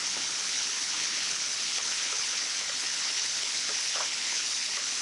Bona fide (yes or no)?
no